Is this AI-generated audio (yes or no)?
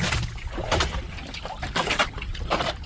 yes